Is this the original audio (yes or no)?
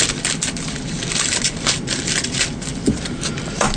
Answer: yes